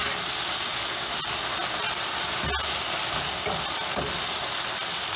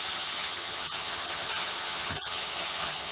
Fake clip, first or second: second